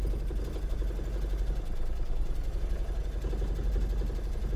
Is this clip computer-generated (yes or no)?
no